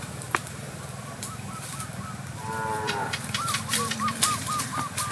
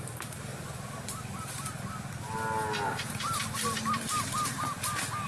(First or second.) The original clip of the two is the second